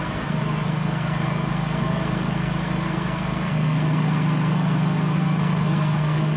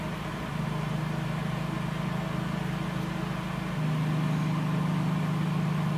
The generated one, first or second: first